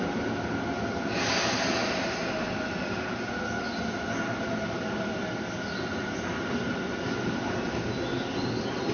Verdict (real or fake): real